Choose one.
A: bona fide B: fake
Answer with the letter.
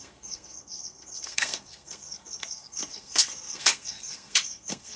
B